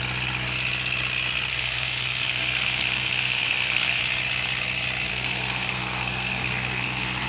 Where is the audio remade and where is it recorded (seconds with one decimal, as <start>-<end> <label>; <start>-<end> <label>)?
0.0-1.5 recorded; 1.5-4.0 remade; 4.0-5.1 recorded; 5.1-7.3 remade